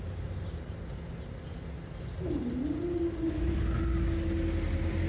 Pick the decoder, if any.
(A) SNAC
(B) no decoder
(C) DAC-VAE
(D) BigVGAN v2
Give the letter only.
B